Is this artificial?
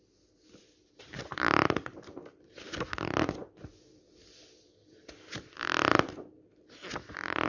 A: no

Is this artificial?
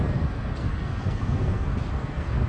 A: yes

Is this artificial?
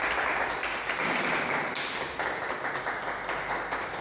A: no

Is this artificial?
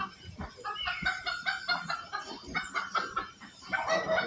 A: no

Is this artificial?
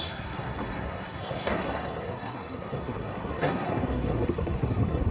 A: yes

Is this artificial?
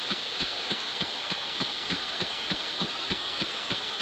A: yes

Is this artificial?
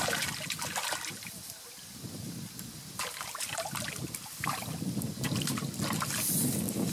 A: no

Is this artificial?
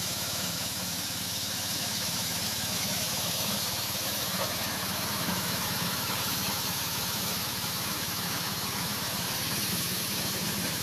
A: yes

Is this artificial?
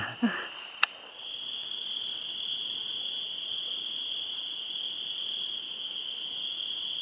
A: no